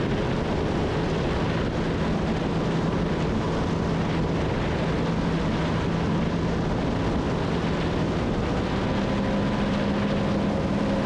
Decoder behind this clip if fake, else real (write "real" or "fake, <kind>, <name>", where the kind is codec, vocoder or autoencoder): real